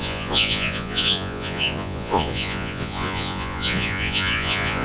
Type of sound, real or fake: fake